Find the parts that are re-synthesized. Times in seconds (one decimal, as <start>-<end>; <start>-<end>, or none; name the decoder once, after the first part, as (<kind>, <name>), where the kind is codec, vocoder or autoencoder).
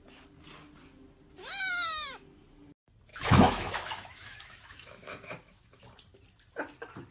3.1-5.8 (autoencoder, DAC-VAE)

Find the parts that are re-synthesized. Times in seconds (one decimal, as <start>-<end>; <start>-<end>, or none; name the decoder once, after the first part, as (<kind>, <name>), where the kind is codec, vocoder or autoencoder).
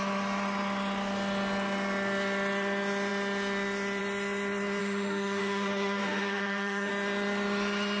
4.8-6.9 (autoencoder, DAC-VAE)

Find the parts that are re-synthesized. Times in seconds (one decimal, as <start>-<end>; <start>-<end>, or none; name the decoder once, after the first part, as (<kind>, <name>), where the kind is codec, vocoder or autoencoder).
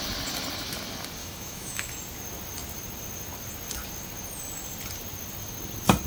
1.2-1.9 (autoencoder, DAC-VAE)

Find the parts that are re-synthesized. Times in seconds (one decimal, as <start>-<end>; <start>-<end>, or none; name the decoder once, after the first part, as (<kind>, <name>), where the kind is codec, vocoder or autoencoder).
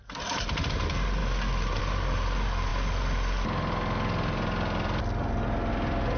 none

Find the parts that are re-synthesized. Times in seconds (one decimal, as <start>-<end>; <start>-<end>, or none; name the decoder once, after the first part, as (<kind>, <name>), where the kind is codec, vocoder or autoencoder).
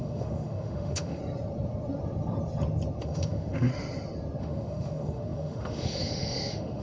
0.0-1.2 (autoencoder, DAC-VAE); 3.0-3.7; 4.4-6.8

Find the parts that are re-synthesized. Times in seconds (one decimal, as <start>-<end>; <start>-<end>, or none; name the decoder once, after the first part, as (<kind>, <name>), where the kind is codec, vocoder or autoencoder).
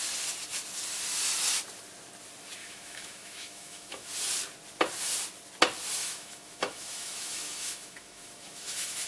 2.6-4.1 (autoencoder, DAC-VAE); 6.0-9.1